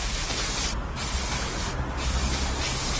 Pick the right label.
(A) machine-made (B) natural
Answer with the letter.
B